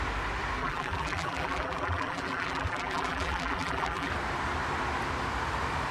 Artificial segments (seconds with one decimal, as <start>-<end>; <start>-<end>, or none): 0.6-4.1